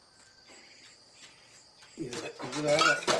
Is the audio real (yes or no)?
yes